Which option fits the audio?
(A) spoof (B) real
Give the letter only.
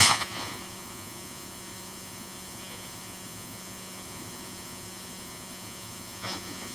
A